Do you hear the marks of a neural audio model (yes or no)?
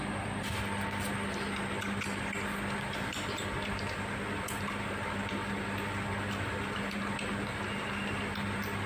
no